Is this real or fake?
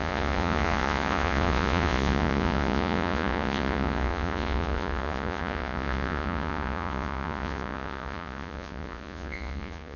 fake